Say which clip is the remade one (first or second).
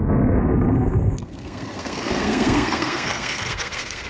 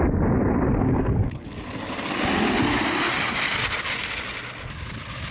first